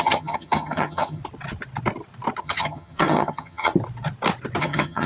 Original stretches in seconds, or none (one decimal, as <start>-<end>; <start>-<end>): 1.2-2.4; 3.7-4.6